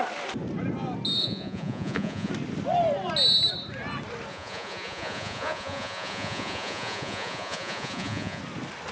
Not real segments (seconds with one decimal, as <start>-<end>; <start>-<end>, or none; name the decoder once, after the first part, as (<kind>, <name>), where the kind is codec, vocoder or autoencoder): 1.2-2.3 (vocoder, Vocos); 4.3-8.4